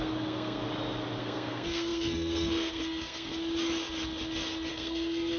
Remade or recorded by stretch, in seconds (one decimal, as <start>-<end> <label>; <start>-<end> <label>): 0.0-0.6 remade; 0.6-1.2 recorded; 1.2-3.3 remade; 3.3-4.7 recorded; 4.7-5.4 remade